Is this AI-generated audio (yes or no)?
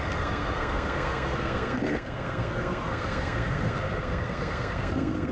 yes